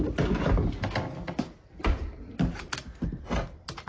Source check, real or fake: real